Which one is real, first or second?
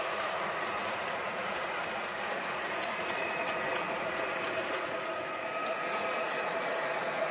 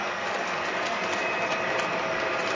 second